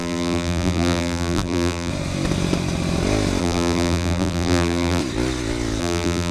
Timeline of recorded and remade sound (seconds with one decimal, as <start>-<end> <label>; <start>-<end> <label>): 0.0-1.9 remade; 1.9-3.4 recorded; 3.4-5.0 remade; 5.0-5.8 recorded; 5.8-6.3 remade